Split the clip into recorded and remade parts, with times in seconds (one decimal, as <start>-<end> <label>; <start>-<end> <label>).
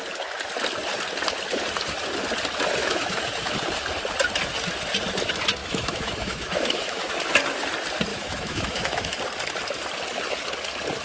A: 0.0-2.8 recorded; 2.8-3.5 remade; 3.5-5.6 recorded; 5.6-7.1 remade; 7.1-8.1 recorded; 8.1-9.2 remade; 9.2-11.0 recorded